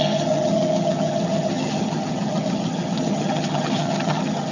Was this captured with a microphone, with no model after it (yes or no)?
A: no